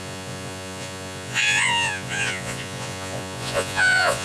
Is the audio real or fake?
fake